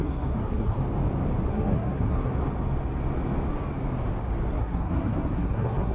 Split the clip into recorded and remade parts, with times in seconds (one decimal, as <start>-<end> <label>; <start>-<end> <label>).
0.0-0.8 remade; 0.8-1.5 recorded; 1.5-2.3 remade; 2.3-4.5 recorded; 4.5-5.9 remade